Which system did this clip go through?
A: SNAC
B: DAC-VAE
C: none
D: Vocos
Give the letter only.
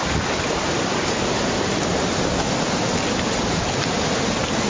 C